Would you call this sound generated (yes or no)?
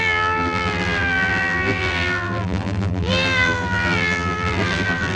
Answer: yes